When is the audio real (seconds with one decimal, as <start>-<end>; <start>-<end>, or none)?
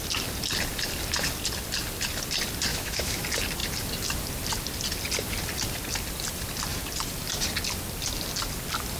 0.0-2.7; 3.2-9.0